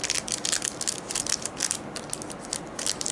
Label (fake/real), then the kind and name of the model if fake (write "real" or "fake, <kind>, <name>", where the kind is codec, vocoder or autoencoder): real